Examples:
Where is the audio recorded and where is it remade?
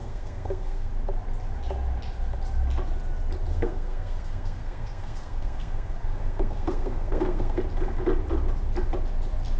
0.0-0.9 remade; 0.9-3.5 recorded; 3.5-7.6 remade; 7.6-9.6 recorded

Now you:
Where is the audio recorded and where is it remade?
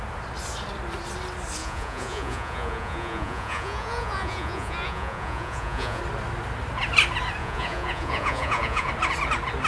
0.0-1.6 recorded; 1.6-6.0 remade; 6.0-7.4 recorded; 7.4-8.9 remade; 8.9-9.7 recorded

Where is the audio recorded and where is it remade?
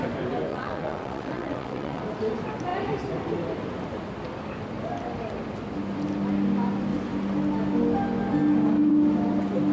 0.0-0.5 recorded; 0.5-2.0 remade; 2.0-9.7 recorded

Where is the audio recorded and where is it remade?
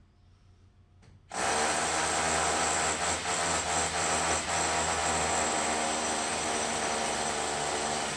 0.0-8.2 recorded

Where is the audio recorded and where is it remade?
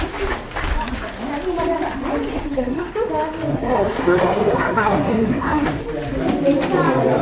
0.0-2.3 recorded; 2.3-2.9 remade; 2.9-3.5 recorded; 3.5-5.8 remade; 5.8-7.2 recorded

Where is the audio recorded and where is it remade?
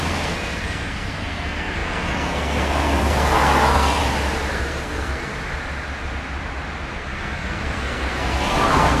0.0-4.0 remade; 4.0-4.5 recorded; 4.5-5.3 remade; 5.3-6.9 recorded; 6.9-9.0 remade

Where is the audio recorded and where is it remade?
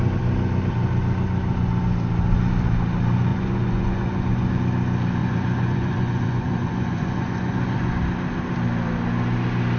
0.0-3.3 recorded; 3.3-4.5 remade; 4.5-5.2 recorded; 5.2-8.0 remade; 8.0-9.8 recorded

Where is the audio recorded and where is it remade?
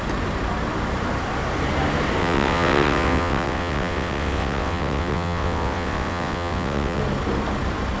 0.0-2.2 recorded; 2.2-7.0 remade; 7.0-8.0 recorded